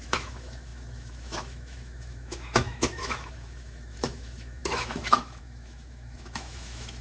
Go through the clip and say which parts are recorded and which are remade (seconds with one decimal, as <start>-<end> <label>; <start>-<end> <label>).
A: 0.0-7.0 remade